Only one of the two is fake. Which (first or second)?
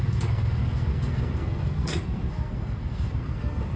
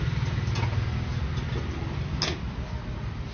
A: first